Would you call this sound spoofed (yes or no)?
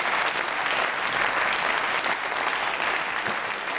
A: no